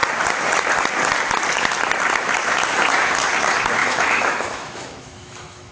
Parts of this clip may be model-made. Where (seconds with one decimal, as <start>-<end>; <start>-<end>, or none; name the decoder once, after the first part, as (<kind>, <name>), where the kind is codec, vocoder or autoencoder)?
3.8-5.7 (autoencoder, DAC-VAE)